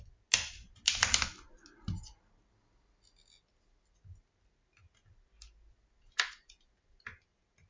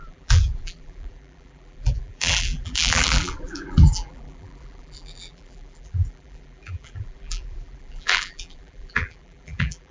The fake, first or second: second